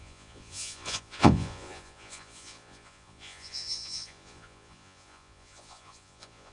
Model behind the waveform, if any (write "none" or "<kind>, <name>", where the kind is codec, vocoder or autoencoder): vocoder, Vocos